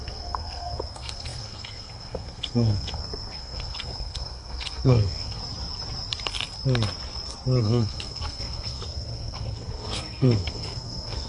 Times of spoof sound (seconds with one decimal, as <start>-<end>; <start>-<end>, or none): 0.0-5.4; 7.6-11.3